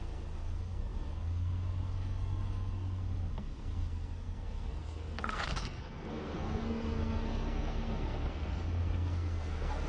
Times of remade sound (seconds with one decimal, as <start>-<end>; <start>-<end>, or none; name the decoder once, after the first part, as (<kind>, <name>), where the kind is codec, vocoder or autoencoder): 0.0-9.9 (codec, SNAC)